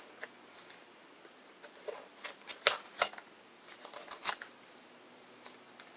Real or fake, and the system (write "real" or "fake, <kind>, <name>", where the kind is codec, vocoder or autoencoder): real